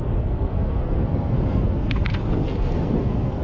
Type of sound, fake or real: fake